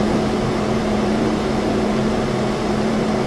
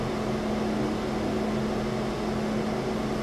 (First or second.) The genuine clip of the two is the second